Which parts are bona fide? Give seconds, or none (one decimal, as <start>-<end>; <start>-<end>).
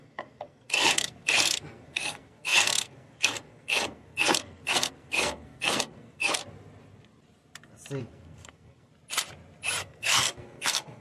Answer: 6.4-8.0; 8.9-9.8